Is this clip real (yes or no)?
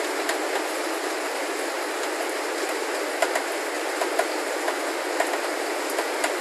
yes